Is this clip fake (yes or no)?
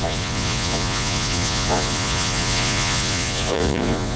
yes